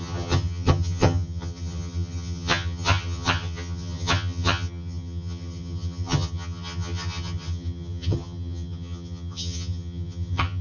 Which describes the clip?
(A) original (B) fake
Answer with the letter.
B